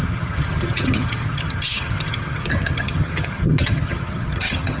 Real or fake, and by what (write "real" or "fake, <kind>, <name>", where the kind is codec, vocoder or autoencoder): fake, vocoder, HiFi-GAN